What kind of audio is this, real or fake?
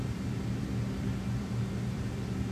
fake